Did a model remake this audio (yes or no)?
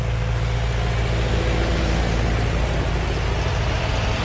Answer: no